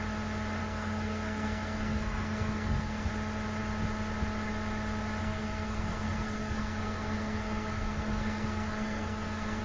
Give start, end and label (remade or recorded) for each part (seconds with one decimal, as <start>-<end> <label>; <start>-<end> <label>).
0.0-0.6 recorded; 0.6-3.1 remade; 3.1-5.2 recorded; 5.2-9.6 remade